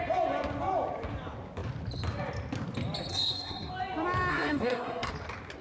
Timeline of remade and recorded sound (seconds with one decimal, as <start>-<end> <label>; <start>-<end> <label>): 0.0-3.1 recorded; 3.1-3.7 remade; 3.7-4.3 recorded; 4.3-5.1 remade; 5.1-5.6 recorded